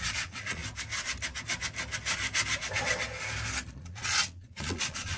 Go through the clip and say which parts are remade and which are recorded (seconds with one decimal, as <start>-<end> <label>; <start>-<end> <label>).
0.0-0.6 remade; 0.6-3.7 recorded; 3.7-5.2 remade